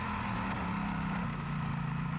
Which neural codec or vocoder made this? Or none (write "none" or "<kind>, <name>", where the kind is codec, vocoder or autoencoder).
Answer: none